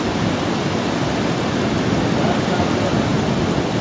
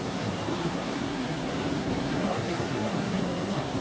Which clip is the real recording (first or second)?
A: first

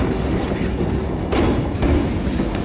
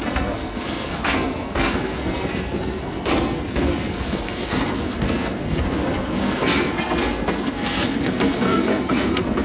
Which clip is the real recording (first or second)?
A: first